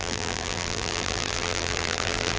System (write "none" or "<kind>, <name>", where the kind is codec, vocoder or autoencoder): vocoder, BigVGAN v2